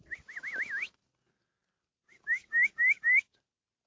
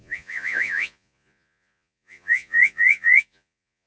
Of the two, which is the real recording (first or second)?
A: first